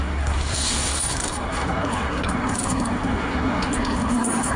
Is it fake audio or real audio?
fake